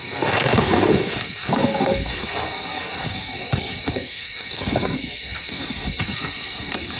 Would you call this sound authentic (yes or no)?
no